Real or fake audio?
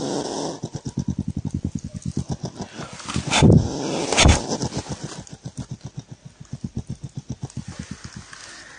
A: real